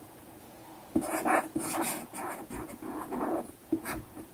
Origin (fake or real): fake